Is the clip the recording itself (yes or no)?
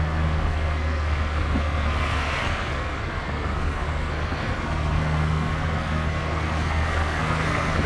no